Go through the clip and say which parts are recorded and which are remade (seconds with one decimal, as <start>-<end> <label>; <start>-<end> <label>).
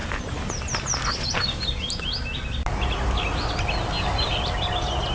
0.0-5.1 recorded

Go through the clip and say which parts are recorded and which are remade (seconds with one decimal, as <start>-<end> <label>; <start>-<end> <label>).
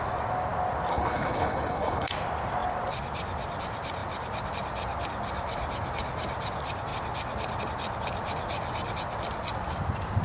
0.0-0.9 recorded; 0.9-2.1 remade; 2.1-10.2 recorded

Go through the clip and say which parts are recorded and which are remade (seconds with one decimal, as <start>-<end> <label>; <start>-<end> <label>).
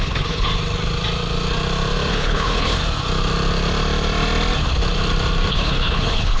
0.0-0.5 remade; 0.5-2.1 recorded; 2.1-2.8 remade; 2.8-5.5 recorded; 5.5-6.4 remade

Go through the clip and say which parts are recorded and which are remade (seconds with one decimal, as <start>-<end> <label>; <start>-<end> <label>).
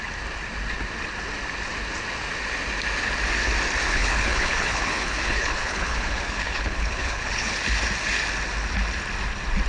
0.0-3.9 recorded; 3.9-7.6 remade; 7.6-9.7 recorded